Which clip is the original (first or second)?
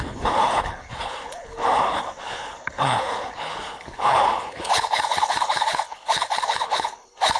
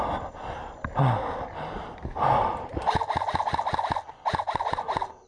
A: second